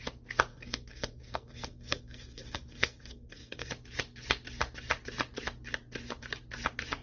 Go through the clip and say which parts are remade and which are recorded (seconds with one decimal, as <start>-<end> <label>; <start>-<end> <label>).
0.0-0.5 recorded; 0.5-3.7 remade; 3.7-7.0 recorded